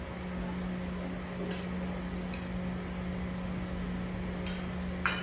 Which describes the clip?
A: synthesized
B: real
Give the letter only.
B